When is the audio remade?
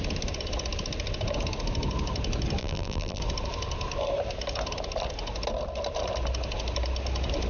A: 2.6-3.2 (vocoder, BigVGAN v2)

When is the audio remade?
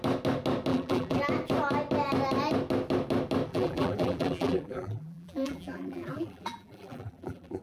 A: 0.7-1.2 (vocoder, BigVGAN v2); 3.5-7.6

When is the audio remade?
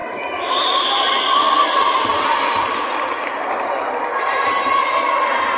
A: 0.0-0.9 (vocoder, BigVGAN v2)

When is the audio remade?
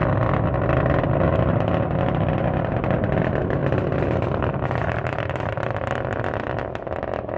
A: 3.6-6.6 (vocoder, BigVGAN v2)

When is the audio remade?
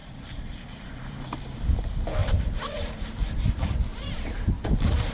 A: 0.0-1.4 (vocoder, BigVGAN v2); 2.2-3.3; 3.9-5.1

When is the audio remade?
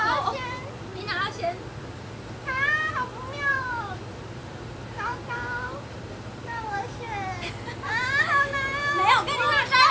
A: 0.9-2.9 (vocoder, BigVGAN v2); 3.5-6.9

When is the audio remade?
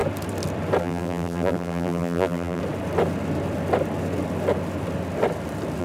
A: 0.8-2.6 (vocoder, BigVGAN v2)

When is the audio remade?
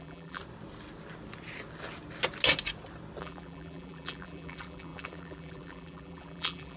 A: 0.0-0.4 (vocoder, BigVGAN v2); 3.2-6.8